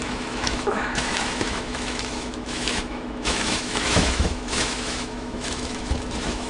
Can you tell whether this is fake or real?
fake